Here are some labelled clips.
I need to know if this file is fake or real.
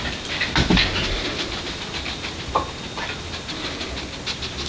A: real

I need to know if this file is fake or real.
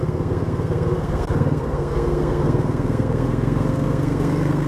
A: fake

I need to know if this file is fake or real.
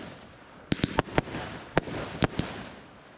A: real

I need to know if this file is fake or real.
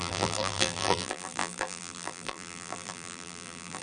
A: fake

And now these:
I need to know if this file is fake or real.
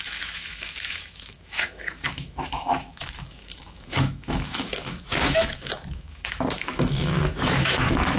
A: fake